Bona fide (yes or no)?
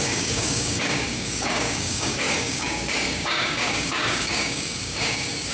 no